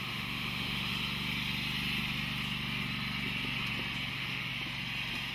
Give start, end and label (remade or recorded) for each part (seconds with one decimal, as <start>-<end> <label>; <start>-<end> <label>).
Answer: 0.0-0.9 remade; 0.9-4.1 recorded; 4.1-4.5 remade; 4.5-5.3 recorded